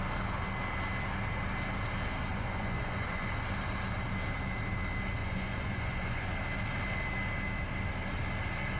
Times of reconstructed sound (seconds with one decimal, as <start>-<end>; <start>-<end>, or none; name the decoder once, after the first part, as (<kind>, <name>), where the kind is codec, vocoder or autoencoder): 2.3-3.3 (vocoder, Vocos); 5.2-6.3